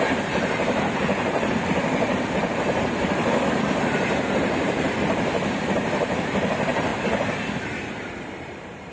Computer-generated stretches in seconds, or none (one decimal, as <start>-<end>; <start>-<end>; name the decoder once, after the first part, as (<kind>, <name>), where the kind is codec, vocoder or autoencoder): 0.0-6.9 (vocoder, BigVGAN v2); 7.9-8.9